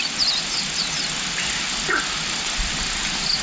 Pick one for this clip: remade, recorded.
recorded